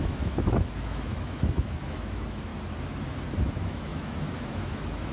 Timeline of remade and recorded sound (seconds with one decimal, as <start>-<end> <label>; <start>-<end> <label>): 0.0-2.5 remade; 2.5-3.5 recorded; 3.5-5.1 remade